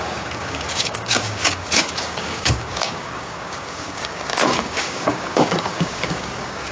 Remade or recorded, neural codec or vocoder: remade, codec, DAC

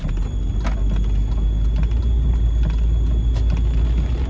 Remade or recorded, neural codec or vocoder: recorded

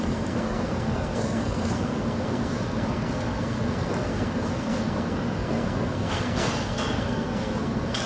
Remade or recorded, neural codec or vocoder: remade, codec, SNAC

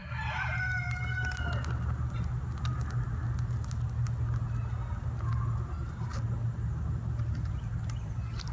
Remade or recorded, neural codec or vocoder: recorded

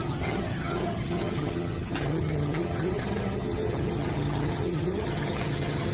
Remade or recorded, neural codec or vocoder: remade, vocoder, HiFi-GAN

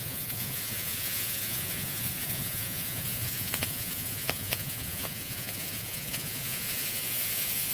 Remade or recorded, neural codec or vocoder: remade, vocoder, Vocos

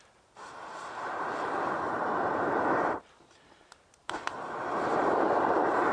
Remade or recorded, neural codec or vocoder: remade, vocoder, BigVGAN v2